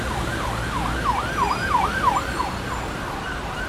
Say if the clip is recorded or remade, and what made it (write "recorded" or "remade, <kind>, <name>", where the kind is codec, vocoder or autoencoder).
recorded